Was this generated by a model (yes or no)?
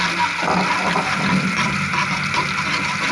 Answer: no